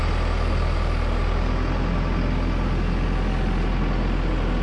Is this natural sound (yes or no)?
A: yes